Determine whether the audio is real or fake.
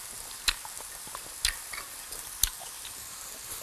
real